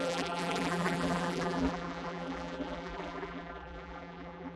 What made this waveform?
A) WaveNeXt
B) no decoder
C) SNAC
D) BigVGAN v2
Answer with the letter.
D